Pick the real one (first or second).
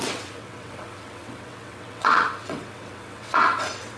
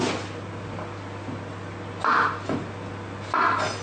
second